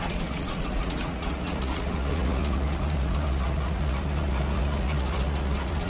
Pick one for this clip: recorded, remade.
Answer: remade